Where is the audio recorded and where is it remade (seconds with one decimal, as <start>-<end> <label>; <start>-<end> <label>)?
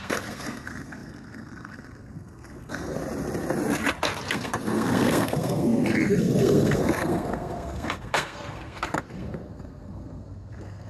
0.0-3.0 remade; 3.0-4.3 recorded; 4.3-10.9 remade